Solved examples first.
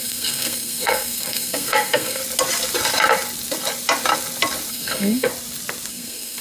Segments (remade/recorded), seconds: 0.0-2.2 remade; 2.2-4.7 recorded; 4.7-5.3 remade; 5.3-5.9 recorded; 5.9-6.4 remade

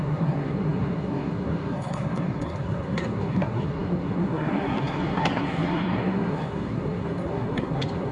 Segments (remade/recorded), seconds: 0.0-8.1 remade

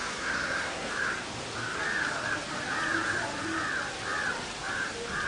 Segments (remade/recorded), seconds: 0.0-0.9 remade; 0.9-5.3 recorded

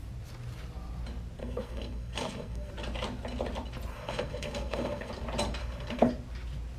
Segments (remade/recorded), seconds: 0.0-1.4 recorded; 1.4-2.7 remade; 2.7-3.9 recorded; 3.9-5.1 remade; 5.1-5.6 recorded; 5.6-6.1 remade; 6.1-6.8 recorded

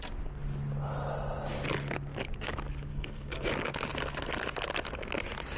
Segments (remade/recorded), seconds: 0.0-2.9 recorded; 2.9-3.5 remade; 3.5-5.6 recorded

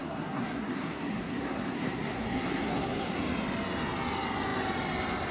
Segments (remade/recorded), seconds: 0.0-3.2 remade; 3.2-5.3 recorded

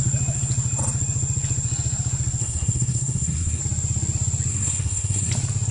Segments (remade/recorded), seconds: 0.0-2.4 recorded; 2.4-3.6 remade; 3.6-4.5 recorded; 4.5-5.3 remade; 5.3-5.7 recorded